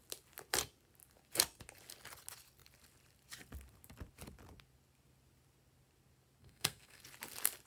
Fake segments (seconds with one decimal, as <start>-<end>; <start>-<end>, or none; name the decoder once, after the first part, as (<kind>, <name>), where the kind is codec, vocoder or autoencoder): 6.4-7.0 (codec, SNAC)